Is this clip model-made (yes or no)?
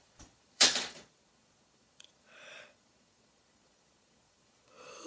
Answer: yes